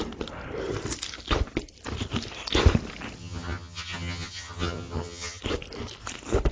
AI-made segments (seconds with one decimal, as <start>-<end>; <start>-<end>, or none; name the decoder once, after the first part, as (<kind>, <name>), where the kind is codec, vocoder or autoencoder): 3.2-5.4 (vocoder, HiFi-GAN)